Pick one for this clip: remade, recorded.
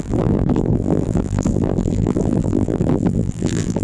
remade